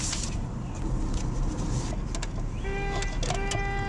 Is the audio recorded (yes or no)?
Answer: yes